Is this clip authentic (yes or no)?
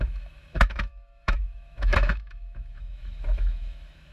no